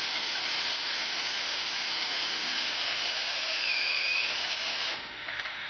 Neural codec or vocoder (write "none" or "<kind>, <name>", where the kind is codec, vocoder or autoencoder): autoencoder, DAC-VAE